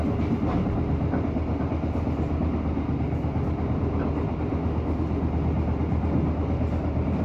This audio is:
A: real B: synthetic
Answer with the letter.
A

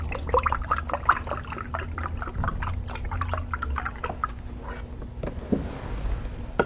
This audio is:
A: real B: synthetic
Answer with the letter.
A